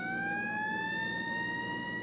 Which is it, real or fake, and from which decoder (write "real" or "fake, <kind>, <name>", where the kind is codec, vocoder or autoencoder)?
real